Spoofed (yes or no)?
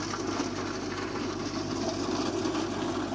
no